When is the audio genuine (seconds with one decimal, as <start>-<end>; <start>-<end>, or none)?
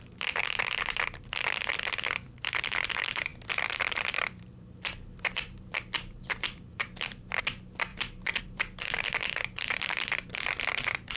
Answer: 0.4-1.7